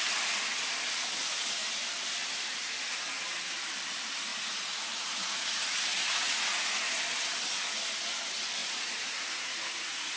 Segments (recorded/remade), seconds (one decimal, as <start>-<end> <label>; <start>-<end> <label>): 0.0-4.3 recorded; 4.3-6.9 remade; 6.9-8.6 recorded; 8.6-10.2 remade